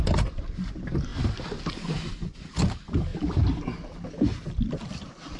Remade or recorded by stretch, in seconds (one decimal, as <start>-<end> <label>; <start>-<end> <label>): 0.0-5.4 recorded